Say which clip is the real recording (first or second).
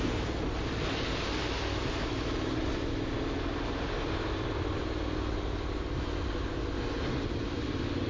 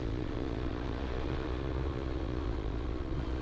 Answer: first